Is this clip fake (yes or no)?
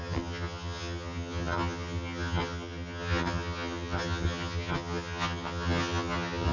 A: yes